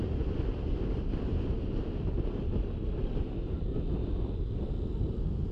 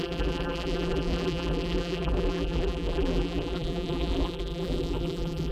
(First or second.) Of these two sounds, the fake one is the second